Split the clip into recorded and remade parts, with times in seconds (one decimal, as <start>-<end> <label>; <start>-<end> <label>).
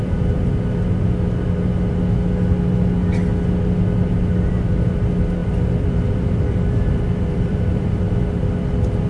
0.0-5.4 recorded; 5.4-8.1 remade; 8.1-9.1 recorded